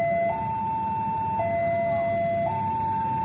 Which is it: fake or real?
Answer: real